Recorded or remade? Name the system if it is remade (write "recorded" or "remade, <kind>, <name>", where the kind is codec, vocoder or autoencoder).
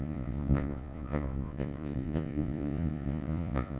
remade, vocoder, Vocos